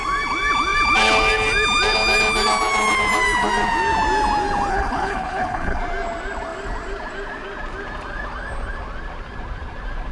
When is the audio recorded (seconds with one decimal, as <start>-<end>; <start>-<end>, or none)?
0.0-4.7; 5.8-10.1